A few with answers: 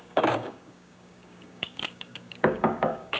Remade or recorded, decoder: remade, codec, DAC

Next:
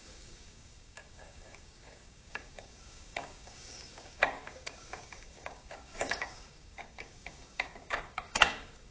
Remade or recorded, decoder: remade, codec, DAC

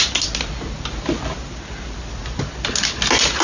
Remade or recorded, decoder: recorded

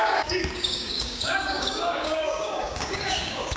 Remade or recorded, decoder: remade, codec, DAC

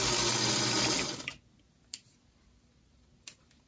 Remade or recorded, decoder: recorded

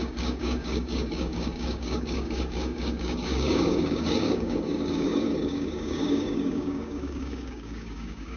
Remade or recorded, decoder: remade, codec, DAC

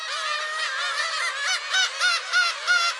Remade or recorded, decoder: recorded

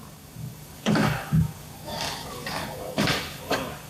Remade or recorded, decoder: remade, codec, DAC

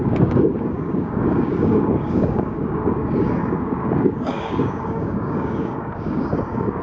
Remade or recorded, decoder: remade, codec, DAC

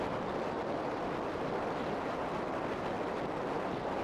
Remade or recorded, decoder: recorded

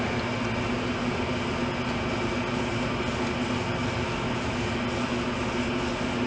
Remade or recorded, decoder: recorded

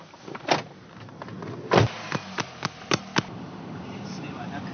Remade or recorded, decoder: recorded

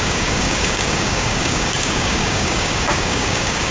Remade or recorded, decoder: remade, codec, DAC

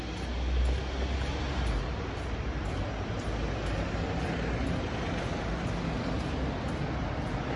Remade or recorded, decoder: recorded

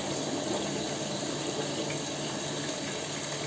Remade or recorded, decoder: recorded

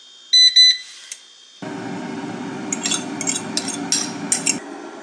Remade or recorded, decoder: recorded